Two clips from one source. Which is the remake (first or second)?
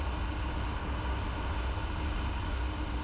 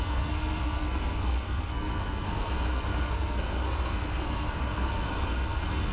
second